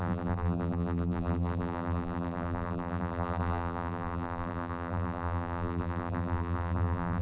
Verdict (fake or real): fake